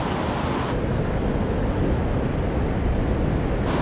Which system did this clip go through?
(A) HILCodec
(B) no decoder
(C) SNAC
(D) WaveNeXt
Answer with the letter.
B